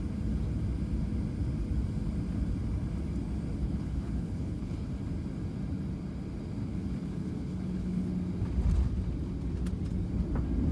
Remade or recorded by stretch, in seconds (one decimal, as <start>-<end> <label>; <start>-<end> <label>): 0.0-3.6 recorded; 3.6-4.9 remade; 4.9-6.6 recorded; 6.6-8.1 remade; 8.1-10.7 recorded